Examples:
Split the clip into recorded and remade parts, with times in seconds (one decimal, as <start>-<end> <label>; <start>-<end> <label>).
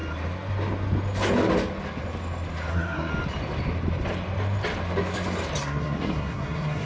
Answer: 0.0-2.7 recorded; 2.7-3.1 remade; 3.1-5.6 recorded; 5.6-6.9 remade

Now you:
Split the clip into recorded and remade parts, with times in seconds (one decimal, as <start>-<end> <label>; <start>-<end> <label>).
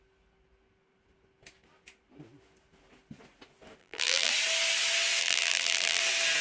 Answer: 0.0-3.8 recorded; 3.8-4.3 remade; 4.3-5.2 recorded; 5.2-6.0 remade; 6.0-6.4 recorded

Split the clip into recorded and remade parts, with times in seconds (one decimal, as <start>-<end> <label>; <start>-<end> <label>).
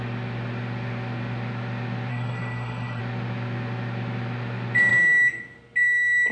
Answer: 0.0-2.1 recorded; 2.1-3.0 remade; 3.0-6.3 recorded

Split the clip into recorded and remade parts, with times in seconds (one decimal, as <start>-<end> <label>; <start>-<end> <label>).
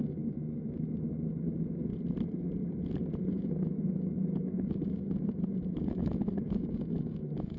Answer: 0.0-1.9 remade; 1.9-3.3 recorded; 3.3-7.6 remade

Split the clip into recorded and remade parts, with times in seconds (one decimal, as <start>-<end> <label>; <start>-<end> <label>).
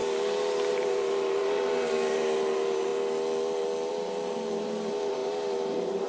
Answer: 0.0-0.7 recorded; 0.7-2.9 remade; 2.9-3.9 recorded; 3.9-6.1 remade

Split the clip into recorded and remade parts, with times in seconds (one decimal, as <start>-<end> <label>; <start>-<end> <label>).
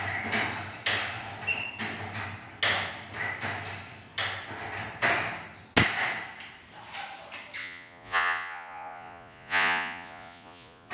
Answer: 0.0-7.6 recorded; 7.6-10.9 remade